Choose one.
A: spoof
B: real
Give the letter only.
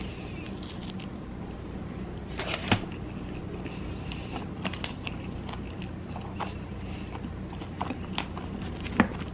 B